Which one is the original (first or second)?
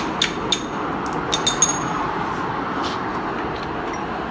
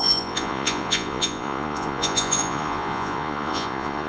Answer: first